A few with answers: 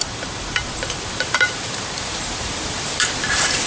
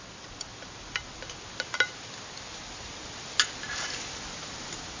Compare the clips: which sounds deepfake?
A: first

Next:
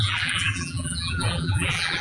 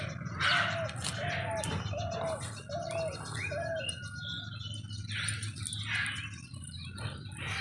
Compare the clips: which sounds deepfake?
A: first